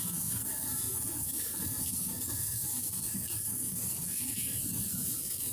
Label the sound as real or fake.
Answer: fake